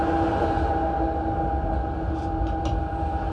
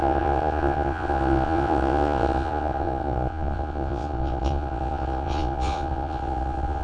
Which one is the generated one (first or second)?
second